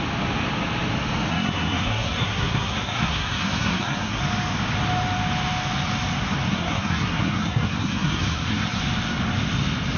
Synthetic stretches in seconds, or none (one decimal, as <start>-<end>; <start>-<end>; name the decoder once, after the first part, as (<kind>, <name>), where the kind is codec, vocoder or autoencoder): 1.3-4.2 (codec, SNAC); 6.5-8.8

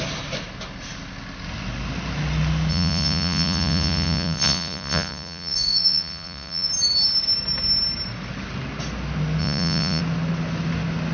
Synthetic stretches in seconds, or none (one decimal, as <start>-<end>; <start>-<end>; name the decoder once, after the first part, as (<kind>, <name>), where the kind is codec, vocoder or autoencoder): 2.7-6.7 (vocoder, Vocos); 9.4-10.0

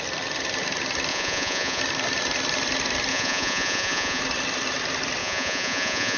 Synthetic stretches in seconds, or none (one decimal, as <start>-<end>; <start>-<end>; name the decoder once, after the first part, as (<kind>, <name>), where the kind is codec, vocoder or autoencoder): 1.1-1.8 (vocoder, Vocos); 3.1-4.2; 5.2-6.2

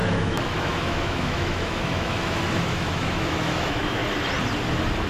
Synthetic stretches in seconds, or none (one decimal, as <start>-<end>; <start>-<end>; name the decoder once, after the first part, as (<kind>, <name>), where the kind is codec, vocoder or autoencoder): 0.0-4.0 (autoencoder, DAC-VAE)

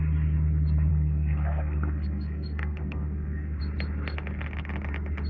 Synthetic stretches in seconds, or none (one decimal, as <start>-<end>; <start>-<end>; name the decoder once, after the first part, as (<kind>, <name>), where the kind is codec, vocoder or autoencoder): 0.9-3.6 (codec, SNAC)